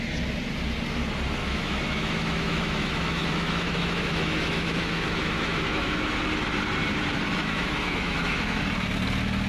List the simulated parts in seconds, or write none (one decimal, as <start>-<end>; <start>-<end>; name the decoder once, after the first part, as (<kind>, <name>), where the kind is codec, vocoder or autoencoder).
1.4-6.0 (autoencoder, DAC-VAE); 7.4-8.6